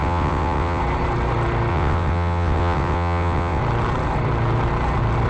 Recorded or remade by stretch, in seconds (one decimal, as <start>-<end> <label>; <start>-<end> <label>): 0.0-0.8 remade; 0.8-1.7 recorded; 1.7-3.6 remade; 3.6-5.3 recorded